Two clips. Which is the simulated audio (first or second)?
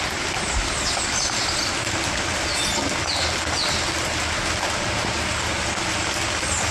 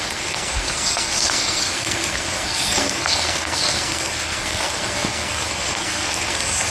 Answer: second